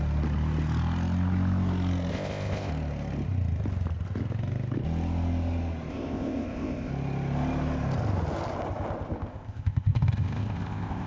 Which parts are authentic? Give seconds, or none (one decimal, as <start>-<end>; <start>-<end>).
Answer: 0.0-2.1; 2.7-5.9; 6.9-9.3